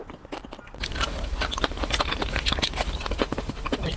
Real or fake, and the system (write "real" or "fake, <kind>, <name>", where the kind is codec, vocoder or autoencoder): real